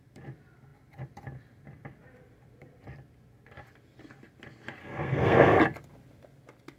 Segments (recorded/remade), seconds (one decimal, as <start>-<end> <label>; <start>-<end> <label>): 0.0-4.8 recorded; 4.8-5.6 remade; 5.6-6.8 recorded